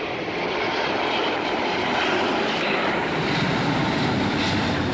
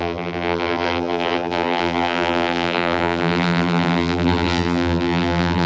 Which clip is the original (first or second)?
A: first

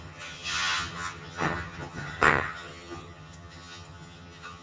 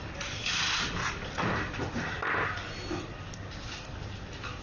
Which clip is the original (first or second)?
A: second